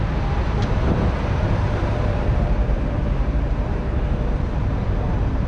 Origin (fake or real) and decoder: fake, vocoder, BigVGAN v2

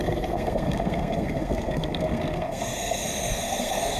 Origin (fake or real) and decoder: fake, codec, SNAC